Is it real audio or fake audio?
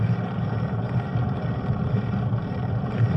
fake